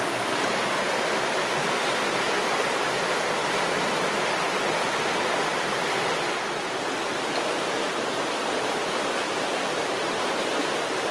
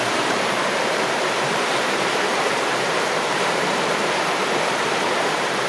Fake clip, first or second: second